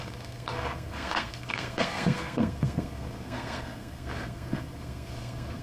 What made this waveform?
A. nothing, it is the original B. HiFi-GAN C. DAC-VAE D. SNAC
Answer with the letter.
D